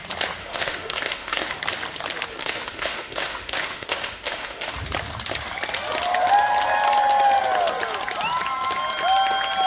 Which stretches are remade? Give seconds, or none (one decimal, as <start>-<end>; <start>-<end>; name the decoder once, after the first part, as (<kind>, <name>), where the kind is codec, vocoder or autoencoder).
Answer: 0.4-1.6 (autoencoder, DAC-VAE); 2.3-4.7